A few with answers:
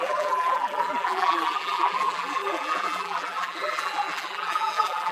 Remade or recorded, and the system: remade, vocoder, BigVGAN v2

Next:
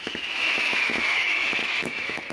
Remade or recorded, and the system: remade, autoencoder, DAC-VAE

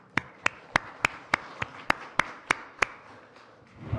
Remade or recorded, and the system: remade, vocoder, BigVGAN v2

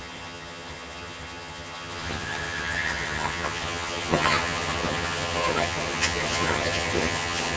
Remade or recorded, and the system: remade, vocoder, HiFi-GAN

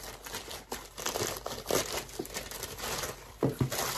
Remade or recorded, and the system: recorded